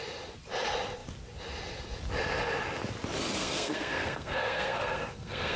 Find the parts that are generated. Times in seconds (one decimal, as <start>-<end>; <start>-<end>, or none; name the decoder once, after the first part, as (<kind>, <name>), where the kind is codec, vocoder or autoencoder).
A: 3.4-5.6 (codec, SNAC)